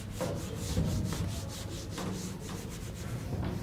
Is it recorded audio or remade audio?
recorded